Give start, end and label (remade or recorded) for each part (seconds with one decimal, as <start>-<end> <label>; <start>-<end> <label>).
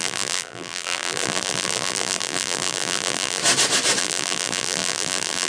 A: 0.0-3.4 remade; 3.4-4.0 recorded; 4.0-5.5 remade